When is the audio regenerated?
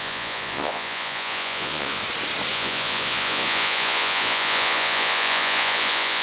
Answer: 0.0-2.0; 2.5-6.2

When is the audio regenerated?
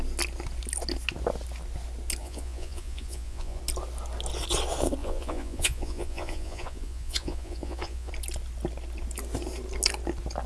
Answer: 2.2-3.6; 5.0-8.1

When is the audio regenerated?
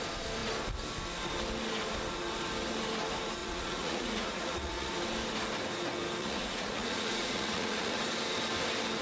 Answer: 3.4-4.9; 6.2-8.0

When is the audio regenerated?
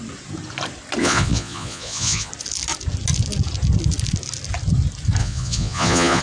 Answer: 1.0-2.3; 5.2-6.2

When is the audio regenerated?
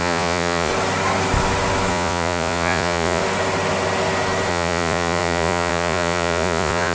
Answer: 0.0-0.7; 1.9-3.2; 4.5-6.9